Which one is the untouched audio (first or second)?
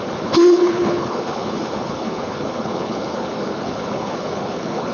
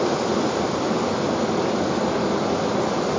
second